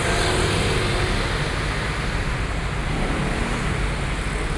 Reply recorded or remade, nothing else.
recorded